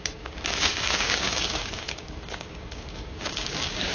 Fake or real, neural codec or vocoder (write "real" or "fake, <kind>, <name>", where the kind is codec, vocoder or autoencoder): fake, codec, DAC